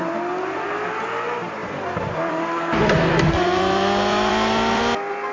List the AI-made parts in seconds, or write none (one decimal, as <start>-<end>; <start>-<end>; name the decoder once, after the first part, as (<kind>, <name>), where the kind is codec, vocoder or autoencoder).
1.6-4.8 (vocoder, BigVGAN v2)